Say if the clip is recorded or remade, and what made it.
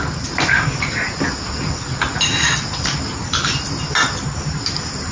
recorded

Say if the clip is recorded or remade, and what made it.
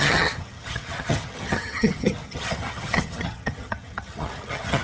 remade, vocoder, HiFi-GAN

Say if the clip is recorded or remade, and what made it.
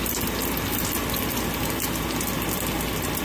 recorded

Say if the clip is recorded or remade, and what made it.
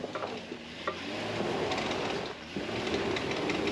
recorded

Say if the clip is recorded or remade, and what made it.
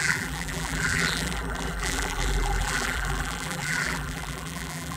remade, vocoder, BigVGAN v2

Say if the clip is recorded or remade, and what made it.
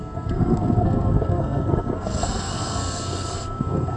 remade, codec, SNAC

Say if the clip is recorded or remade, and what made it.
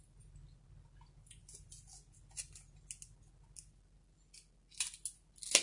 recorded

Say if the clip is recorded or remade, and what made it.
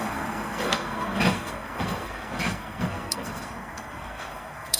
remade, codec, SNAC